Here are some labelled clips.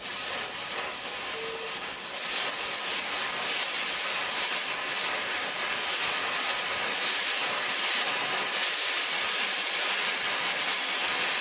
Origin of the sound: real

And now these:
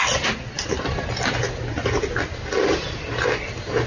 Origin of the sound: real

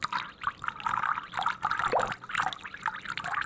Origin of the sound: real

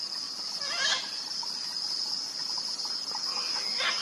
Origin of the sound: real